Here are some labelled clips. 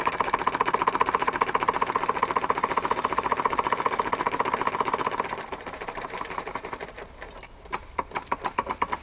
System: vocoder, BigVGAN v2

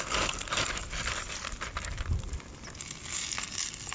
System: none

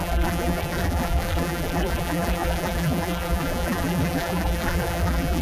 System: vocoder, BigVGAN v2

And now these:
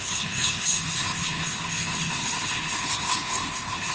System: codec, HILCodec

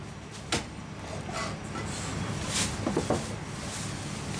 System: none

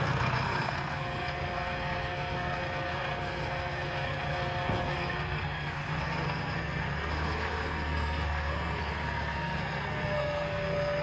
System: codec, SNAC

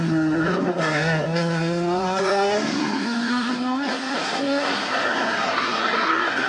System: codec, SNAC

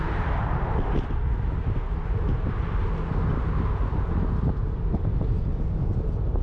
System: none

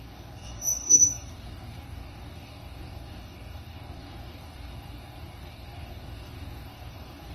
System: codec, DAC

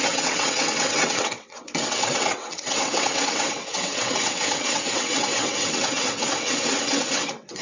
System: vocoder, WaveNeXt